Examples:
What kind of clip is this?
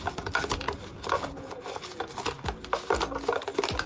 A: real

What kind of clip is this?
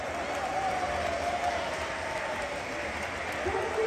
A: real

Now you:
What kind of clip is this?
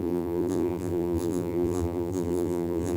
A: fake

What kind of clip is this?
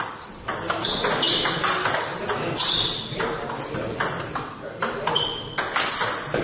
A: real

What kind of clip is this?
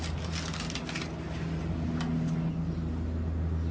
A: real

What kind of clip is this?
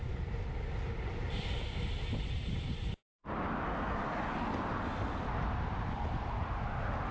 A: real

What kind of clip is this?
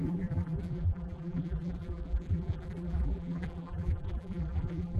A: fake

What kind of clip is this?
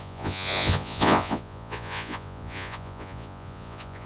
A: fake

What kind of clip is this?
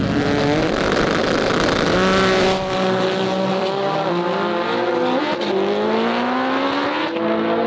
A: real